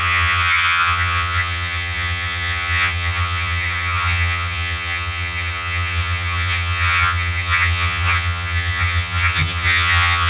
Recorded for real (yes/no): no